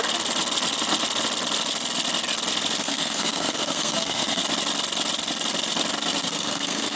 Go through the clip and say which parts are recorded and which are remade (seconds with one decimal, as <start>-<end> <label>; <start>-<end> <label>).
0.0-2.8 recorded; 2.8-4.4 remade; 4.4-6.2 recorded; 6.2-7.0 remade